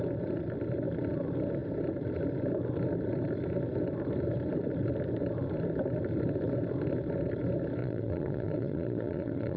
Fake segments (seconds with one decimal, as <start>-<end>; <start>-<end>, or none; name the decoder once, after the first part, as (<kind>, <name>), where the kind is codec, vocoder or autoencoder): 7.8-9.6 (vocoder, Vocos)